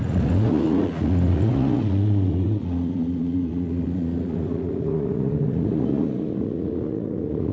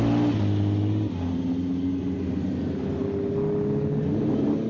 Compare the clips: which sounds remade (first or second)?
first